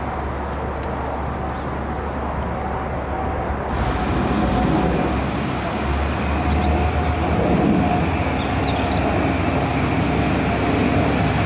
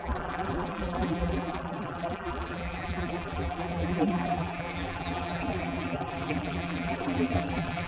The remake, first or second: second